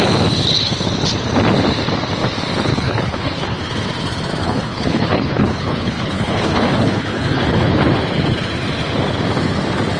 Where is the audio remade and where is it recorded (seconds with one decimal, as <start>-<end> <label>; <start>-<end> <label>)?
0.0-2.7 recorded; 2.7-3.6 remade; 3.6-4.4 recorded; 4.4-7.7 remade; 7.7-10.0 recorded